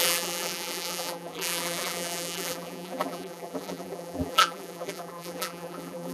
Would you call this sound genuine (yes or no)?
no